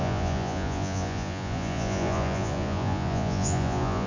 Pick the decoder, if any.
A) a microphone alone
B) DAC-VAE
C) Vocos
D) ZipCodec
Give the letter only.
C